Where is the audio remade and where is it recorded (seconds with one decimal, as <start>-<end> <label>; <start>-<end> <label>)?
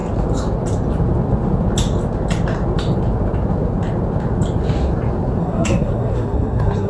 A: 0.0-5.4 recorded; 5.4-6.9 remade